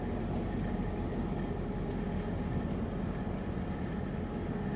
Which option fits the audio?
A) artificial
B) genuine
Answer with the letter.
B